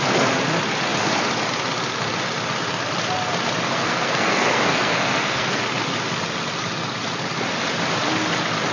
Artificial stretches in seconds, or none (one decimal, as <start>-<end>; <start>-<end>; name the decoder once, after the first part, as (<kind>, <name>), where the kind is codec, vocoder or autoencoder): 3.7-5.6 (codec, SNAC)